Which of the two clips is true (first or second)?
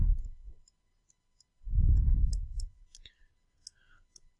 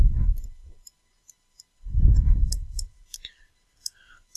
first